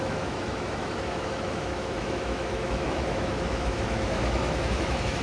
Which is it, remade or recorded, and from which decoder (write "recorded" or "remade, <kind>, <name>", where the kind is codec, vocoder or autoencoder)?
remade, autoencoder, DAC-VAE